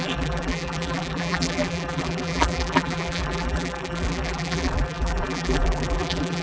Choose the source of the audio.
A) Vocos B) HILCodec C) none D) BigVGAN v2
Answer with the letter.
D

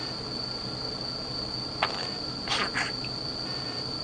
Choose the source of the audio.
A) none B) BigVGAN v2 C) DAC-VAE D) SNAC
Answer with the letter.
A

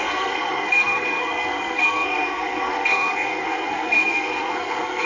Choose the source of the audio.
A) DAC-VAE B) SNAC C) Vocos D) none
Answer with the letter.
B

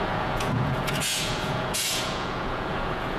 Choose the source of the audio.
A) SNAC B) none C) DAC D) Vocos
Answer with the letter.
D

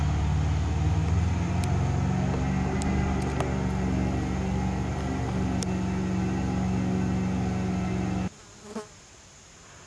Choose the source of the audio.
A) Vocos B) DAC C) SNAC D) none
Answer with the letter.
D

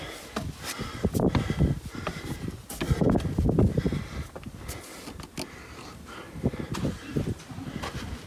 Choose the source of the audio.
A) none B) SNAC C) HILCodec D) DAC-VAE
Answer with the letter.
A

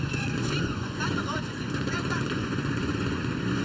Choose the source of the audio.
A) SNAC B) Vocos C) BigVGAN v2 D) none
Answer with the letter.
B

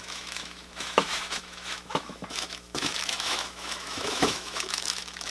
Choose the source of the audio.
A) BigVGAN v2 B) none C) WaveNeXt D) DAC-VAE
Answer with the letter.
D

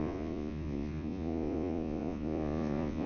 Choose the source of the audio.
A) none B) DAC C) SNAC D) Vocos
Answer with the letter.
D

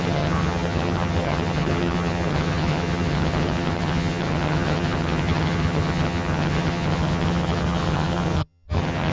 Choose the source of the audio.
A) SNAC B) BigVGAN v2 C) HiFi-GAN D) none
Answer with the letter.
C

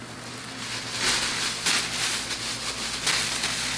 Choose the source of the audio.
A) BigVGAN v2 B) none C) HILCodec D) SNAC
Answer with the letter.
B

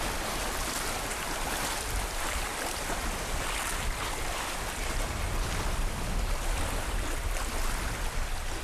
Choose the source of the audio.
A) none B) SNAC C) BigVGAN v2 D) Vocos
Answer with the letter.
A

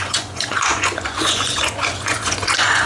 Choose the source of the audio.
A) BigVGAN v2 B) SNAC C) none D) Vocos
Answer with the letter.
D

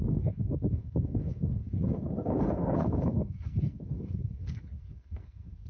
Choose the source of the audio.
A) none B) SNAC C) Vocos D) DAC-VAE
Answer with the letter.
B